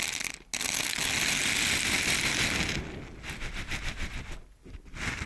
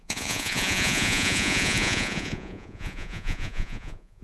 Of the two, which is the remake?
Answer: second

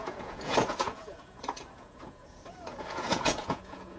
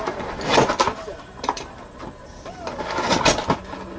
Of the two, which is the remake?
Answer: first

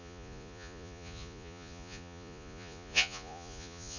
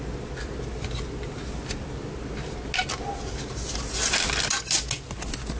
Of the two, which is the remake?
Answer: first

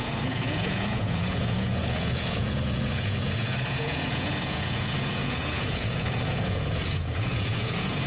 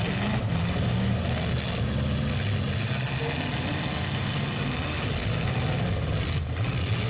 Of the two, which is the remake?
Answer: first